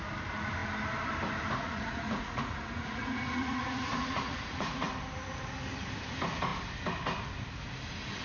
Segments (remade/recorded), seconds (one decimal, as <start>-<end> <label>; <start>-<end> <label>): 0.0-1.6 recorded; 1.6-4.9 remade; 4.9-8.2 recorded